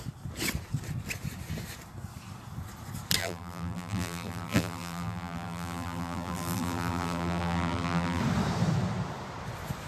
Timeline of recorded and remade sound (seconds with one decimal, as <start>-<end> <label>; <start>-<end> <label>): 0.0-3.2 recorded; 3.2-8.2 remade; 8.2-9.9 recorded